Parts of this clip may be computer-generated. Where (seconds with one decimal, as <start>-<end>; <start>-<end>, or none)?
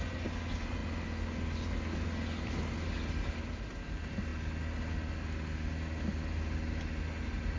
none